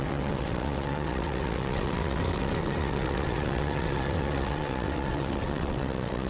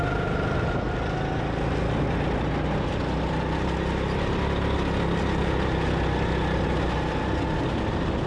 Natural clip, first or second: second